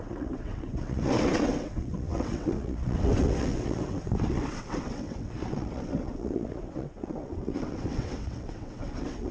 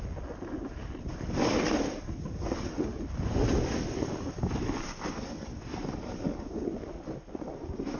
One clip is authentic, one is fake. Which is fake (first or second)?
first